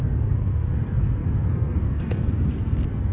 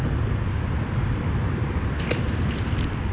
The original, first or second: second